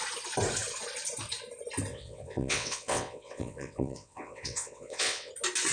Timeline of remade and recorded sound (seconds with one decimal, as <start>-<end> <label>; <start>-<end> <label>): 0.0-1.9 recorded; 1.9-5.3 remade; 5.3-5.7 recorded